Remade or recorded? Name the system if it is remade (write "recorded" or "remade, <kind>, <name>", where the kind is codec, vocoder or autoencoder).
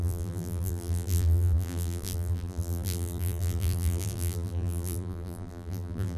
remade, vocoder, BigVGAN v2